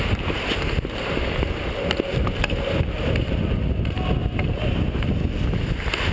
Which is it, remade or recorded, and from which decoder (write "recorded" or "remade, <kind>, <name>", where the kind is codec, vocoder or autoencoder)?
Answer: recorded